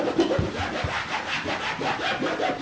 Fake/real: real